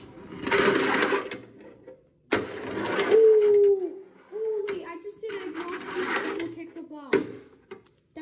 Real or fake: real